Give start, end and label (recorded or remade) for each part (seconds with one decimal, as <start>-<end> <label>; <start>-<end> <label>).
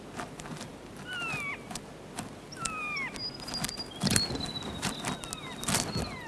0.0-6.3 recorded